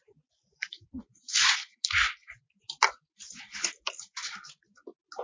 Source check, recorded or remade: recorded